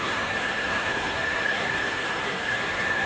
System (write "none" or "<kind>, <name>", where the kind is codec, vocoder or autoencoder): codec, SNAC